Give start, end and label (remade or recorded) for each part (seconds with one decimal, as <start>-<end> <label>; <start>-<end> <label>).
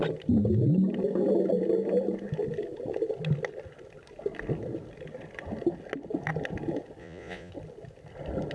0.0-7.0 recorded; 7.0-7.5 remade; 7.5-8.5 recorded